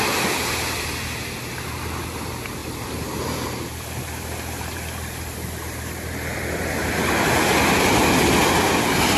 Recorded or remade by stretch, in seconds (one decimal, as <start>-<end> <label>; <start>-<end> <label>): 0.0-2.6 recorded; 2.6-3.1 remade; 3.1-9.2 recorded

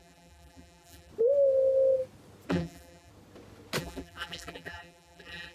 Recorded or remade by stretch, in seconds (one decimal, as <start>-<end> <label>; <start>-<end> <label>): 0.0-1.1 remade; 1.1-2.5 recorded; 2.5-3.1 remade; 3.1-3.8 recorded; 3.8-5.5 remade

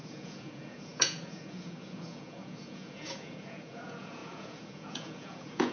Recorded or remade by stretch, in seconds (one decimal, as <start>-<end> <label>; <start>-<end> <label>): 0.0-5.7 remade

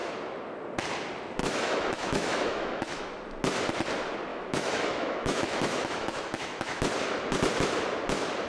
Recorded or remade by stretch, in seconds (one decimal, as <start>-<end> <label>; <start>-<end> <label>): 0.0-1.4 recorded; 1.4-3.0 remade; 3.0-4.3 recorded; 4.3-6.8 remade; 6.8-8.5 recorded

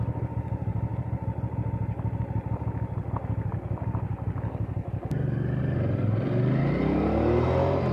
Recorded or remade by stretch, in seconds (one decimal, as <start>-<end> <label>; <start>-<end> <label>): 0.0-7.9 recorded

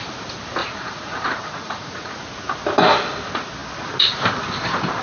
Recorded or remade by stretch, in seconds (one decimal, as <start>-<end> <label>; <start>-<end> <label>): 0.0-0.6 recorded; 0.6-2.1 remade; 2.1-5.0 recorded

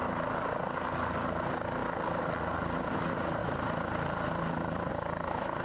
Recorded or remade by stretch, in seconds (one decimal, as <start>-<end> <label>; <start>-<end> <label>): 0.0-1.8 recorded; 1.8-2.6 remade; 2.6-3.4 recorded; 3.4-4.9 remade; 4.9-5.6 recorded